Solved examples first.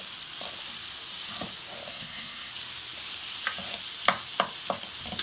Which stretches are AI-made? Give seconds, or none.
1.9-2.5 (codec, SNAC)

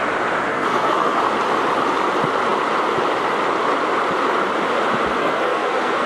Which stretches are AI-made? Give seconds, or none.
0.5-1.2 (codec, SNAC); 5.2-6.1

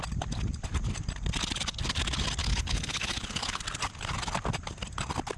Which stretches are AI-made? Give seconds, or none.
2.4-3.6 (codec, HILCodec)